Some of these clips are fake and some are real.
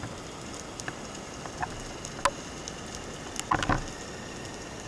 real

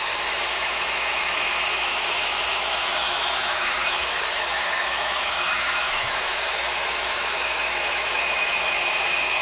fake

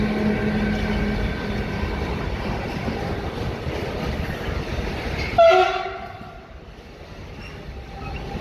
real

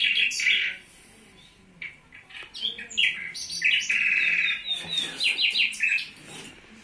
real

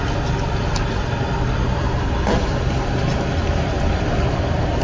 real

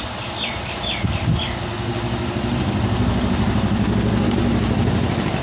real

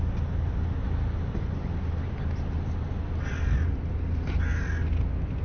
real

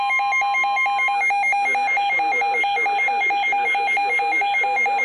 real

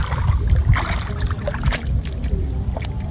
real